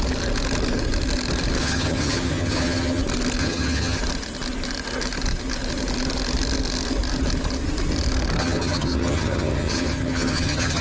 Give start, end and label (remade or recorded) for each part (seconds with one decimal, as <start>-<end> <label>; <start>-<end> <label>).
0.0-1.6 recorded; 1.6-3.0 remade; 3.0-3.4 recorded; 3.4-4.0 remade; 4.0-8.4 recorded; 8.4-10.8 remade

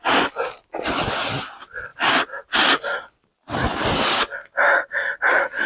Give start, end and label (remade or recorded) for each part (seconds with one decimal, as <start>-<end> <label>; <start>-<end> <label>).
0.0-5.7 recorded

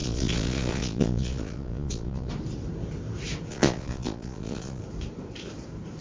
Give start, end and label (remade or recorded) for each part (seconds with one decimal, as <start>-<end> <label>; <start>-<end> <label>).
0.0-2.3 remade; 2.3-3.5 recorded; 3.5-4.8 remade; 4.8-6.0 recorded

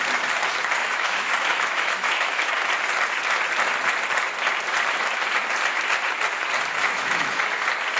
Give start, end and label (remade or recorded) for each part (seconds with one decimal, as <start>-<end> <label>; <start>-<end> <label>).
0.0-0.8 recorded; 0.8-2.5 remade; 2.5-6.8 recorded; 6.8-7.4 remade; 7.4-8.0 recorded

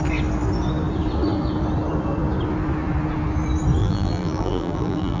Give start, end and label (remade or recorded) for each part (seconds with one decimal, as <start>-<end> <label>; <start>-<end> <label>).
0.0-3.8 recorded; 3.8-5.2 remade

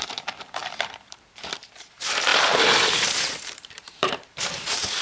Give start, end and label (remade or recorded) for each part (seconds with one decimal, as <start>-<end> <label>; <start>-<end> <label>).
0.0-5.0 remade

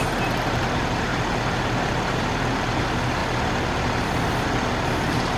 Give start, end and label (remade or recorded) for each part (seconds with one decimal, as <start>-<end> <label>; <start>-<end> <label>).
0.0-5.4 recorded